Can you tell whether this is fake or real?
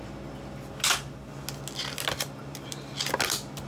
real